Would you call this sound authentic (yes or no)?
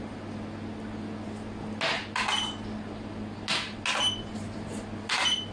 yes